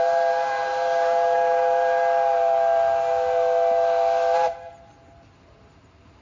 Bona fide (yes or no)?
yes